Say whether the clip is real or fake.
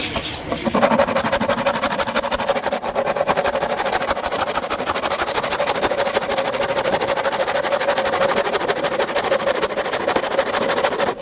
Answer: real